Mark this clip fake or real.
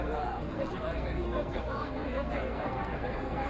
fake